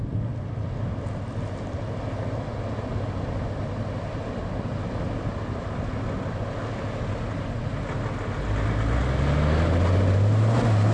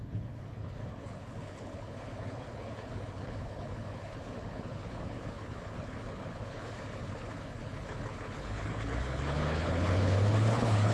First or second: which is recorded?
first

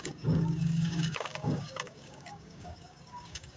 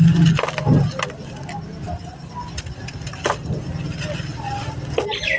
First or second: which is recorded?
second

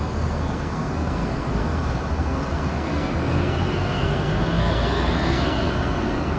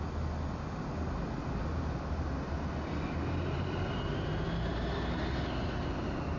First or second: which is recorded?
second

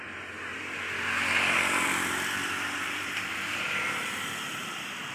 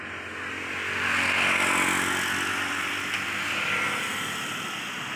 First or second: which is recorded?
second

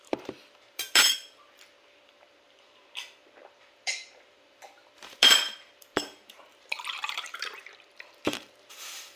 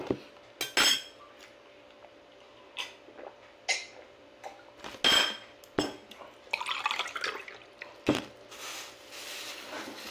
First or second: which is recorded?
second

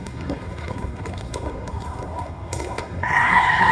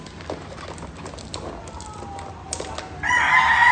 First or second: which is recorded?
second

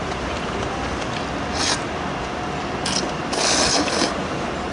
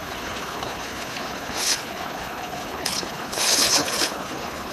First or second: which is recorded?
first